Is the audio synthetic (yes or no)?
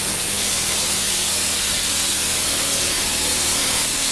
yes